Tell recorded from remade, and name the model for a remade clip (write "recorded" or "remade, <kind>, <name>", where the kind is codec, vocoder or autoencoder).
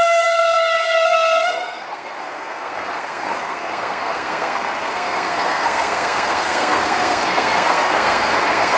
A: remade, codec, SNAC